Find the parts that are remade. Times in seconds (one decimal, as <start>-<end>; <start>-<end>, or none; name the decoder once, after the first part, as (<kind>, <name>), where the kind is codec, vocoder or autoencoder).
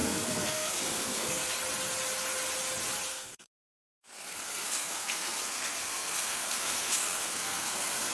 0.0-1.5 (codec, SNAC); 3.1-8.1